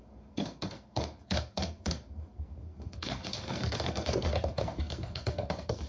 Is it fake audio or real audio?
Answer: fake